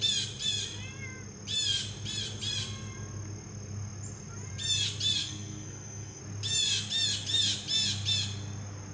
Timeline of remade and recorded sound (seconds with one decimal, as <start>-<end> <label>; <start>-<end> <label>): 0.0-5.2 recorded; 5.2-6.2 remade; 6.2-8.9 recorded